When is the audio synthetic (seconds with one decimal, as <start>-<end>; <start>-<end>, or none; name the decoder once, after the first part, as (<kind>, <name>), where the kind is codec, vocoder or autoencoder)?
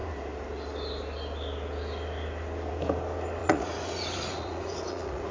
3.4-5.3 (vocoder, Vocos)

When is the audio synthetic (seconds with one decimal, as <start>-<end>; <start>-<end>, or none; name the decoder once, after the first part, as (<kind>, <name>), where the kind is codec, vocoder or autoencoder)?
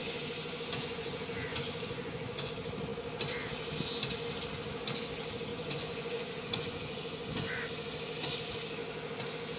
0.0-2.5 (vocoder, Vocos); 5.5-7.6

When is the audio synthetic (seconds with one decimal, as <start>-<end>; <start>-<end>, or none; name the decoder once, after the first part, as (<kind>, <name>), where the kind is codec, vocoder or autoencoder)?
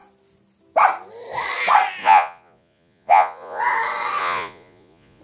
2.0-3.6 (vocoder, Vocos); 4.2-5.2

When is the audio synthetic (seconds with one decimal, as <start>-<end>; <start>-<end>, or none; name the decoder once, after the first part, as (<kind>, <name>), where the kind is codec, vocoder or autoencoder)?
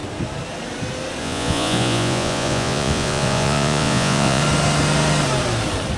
1.2-4.4 (vocoder, Vocos)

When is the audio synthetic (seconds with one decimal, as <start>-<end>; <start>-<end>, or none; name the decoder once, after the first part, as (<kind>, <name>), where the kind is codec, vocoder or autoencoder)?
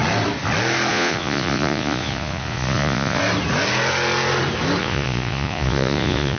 0.9-3.2 (vocoder, Vocos); 4.8-6.4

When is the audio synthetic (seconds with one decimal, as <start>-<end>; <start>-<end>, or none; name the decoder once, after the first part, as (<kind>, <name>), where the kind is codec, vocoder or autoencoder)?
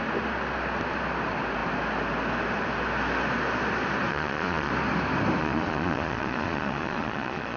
4.1-4.7 (vocoder, Vocos); 5.4-7.6